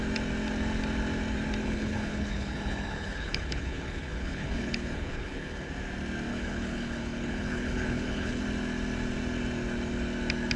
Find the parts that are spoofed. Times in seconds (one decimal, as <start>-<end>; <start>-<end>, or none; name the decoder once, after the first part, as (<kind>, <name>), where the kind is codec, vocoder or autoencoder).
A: 1.6-5.7 (codec, HILCodec); 6.3-8.4